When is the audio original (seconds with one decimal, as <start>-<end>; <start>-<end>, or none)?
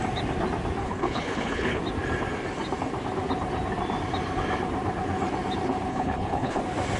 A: 0.0-0.8; 1.8-5.9; 6.6-7.0